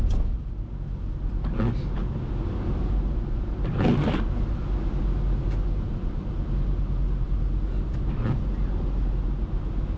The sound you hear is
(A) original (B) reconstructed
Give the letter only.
A